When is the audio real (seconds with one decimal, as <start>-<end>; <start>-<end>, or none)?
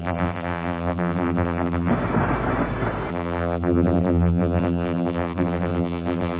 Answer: 1.9-3.1